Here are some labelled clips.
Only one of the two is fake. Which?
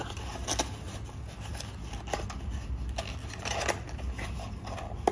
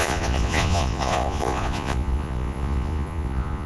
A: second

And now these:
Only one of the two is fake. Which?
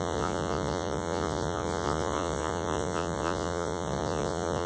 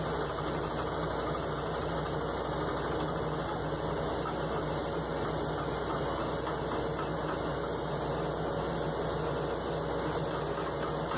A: first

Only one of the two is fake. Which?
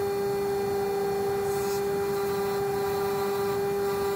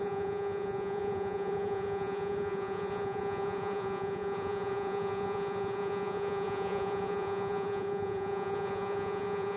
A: second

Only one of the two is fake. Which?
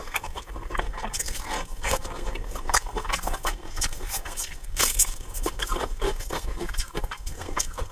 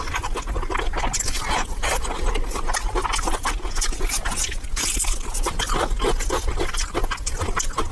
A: first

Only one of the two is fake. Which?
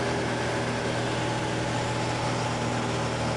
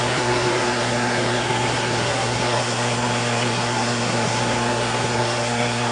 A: second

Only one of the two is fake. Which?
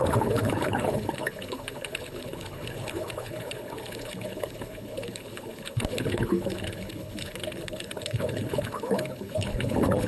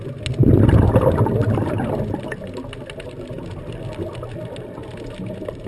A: first